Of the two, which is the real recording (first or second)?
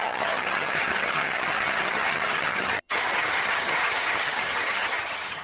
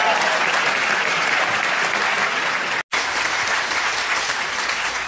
second